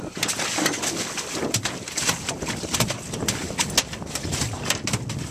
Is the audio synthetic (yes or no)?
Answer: no